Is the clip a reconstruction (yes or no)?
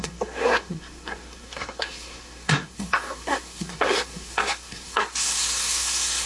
yes